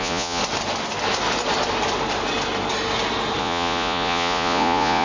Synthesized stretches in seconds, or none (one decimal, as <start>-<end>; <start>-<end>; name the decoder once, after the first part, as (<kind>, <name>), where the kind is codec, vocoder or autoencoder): 0.0-0.4 (vocoder, Vocos); 3.4-5.0